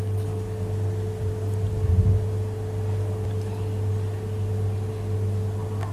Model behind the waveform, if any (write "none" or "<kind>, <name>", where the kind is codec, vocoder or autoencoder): none